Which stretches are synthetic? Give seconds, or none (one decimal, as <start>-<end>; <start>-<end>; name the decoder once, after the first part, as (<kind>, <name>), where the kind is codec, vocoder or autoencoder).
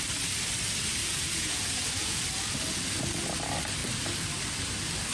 1.0-2.2 (vocoder, Vocos)